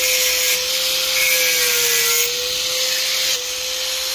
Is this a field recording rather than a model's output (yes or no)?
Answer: yes